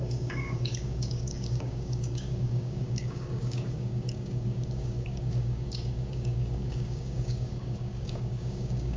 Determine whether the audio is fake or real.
fake